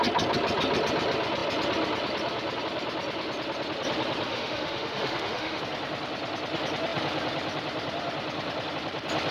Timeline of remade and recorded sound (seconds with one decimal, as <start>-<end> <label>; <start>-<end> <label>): 0.0-4.3 recorded; 4.3-5.6 remade; 5.6-9.3 recorded